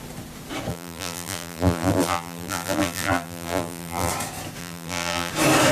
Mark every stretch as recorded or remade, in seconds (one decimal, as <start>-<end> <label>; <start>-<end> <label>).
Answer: 0.0-0.7 recorded; 0.7-4.1 remade; 4.1-4.6 recorded; 4.6-5.3 remade; 5.3-5.7 recorded